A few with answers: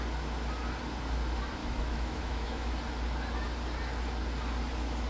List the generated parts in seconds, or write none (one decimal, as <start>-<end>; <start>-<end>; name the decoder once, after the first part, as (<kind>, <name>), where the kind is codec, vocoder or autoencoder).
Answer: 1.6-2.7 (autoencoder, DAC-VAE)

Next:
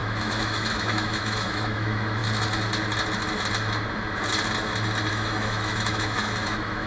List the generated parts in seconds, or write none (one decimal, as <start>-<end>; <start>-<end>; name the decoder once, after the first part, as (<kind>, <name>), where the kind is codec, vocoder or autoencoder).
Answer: 0.0-2.2 (autoencoder, DAC-VAE); 5.1-6.9

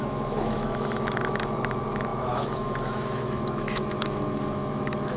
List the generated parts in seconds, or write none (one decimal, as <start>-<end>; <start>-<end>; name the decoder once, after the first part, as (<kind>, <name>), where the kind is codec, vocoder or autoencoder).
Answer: 0.0-5.2 (autoencoder, DAC-VAE)

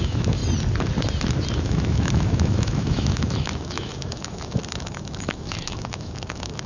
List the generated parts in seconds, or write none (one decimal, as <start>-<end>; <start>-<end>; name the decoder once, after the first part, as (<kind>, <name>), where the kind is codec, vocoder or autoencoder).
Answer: 0.0-0.4 (autoencoder, DAC-VAE); 1.6-6.7